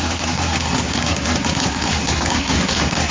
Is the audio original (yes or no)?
no